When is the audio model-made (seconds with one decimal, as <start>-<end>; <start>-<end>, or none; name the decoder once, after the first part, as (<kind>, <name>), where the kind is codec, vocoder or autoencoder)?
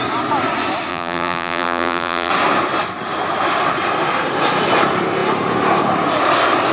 0.9-2.3 (vocoder, BigVGAN v2)